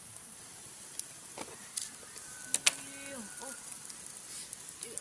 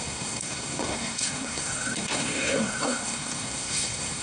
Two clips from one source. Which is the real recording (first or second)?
first